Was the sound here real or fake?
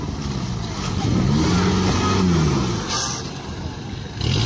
real